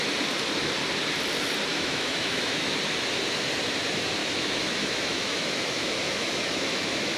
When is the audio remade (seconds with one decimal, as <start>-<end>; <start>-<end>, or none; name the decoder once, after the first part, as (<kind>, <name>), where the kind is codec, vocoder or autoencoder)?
1.7-2.7 (autoencoder, DAC-VAE); 4.2-7.2